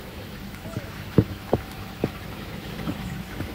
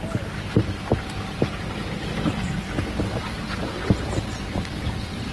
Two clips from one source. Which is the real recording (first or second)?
second